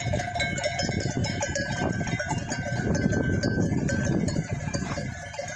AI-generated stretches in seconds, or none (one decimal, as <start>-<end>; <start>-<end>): 1.2-2.3; 3.7-5.6